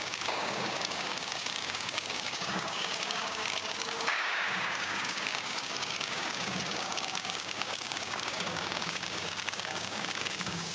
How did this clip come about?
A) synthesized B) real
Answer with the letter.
A